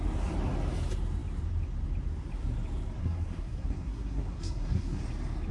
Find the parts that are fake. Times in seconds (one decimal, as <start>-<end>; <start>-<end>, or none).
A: 3.0-5.0